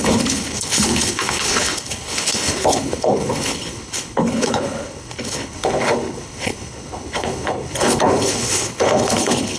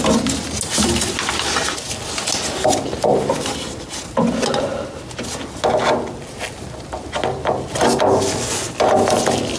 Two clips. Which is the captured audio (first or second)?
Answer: second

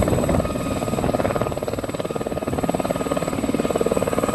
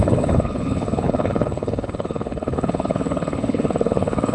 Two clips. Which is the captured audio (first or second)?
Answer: first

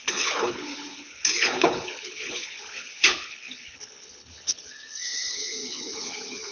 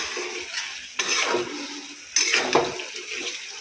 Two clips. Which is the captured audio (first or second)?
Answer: second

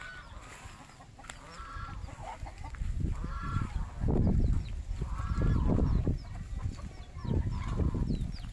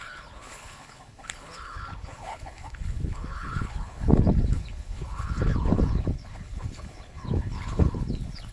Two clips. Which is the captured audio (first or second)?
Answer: first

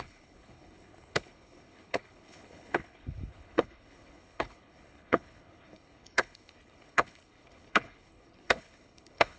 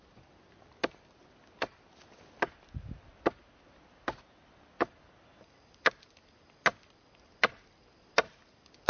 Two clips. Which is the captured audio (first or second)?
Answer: second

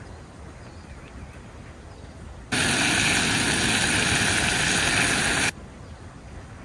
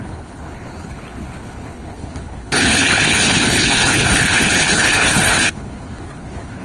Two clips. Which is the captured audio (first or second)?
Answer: first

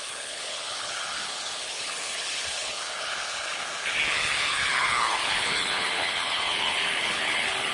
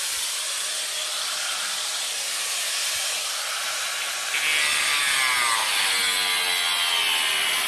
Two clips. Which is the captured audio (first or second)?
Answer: second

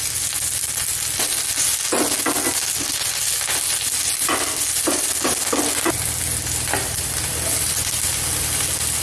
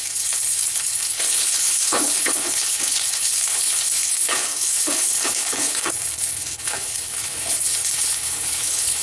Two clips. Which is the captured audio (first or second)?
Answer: first